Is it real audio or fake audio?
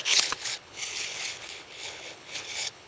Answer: fake